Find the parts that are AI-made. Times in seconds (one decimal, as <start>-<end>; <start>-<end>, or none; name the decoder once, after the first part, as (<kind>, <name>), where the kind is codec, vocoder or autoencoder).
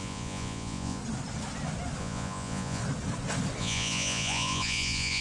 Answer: 0.0-1.0 (vocoder, Vocos); 2.0-2.8; 3.6-5.2